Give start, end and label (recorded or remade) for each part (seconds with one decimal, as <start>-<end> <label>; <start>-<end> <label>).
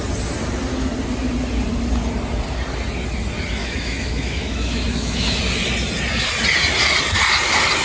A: 0.0-3.6 recorded; 3.6-5.4 remade; 5.4-7.8 recorded